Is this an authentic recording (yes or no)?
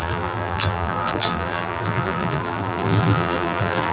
no